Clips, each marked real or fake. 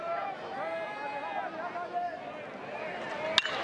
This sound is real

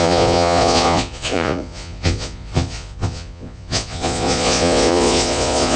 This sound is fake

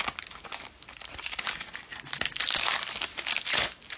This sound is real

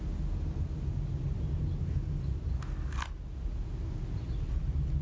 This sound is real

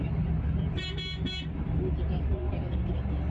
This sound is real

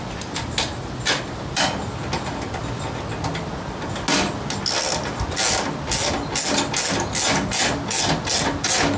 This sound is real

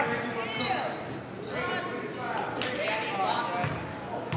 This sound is real